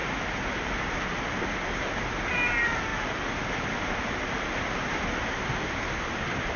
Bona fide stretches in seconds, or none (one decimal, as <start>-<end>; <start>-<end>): 0.9-6.6